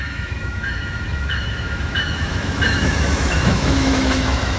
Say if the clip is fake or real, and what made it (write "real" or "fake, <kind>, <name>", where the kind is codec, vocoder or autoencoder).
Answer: fake, autoencoder, DAC-VAE